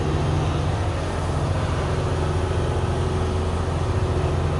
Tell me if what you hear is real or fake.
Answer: real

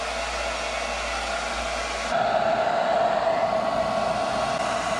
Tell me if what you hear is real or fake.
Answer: real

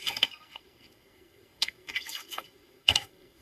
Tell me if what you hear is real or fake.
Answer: fake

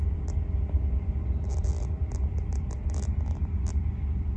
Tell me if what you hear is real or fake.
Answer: real